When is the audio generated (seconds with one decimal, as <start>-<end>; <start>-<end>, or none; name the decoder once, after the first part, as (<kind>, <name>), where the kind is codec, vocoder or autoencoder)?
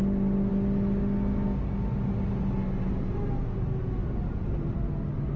4.0-4.8 (vocoder, BigVGAN v2)